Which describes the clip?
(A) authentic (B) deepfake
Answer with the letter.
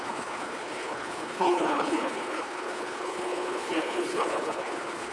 B